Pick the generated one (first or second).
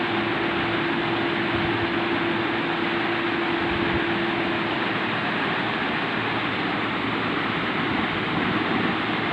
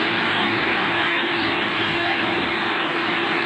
second